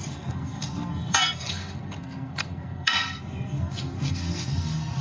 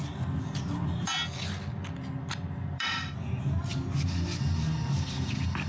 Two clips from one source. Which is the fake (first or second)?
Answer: first